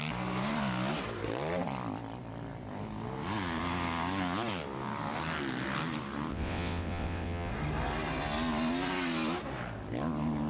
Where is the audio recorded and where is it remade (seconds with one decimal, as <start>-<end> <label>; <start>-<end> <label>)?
0.0-6.3 recorded; 6.3-7.5 remade; 7.5-10.5 recorded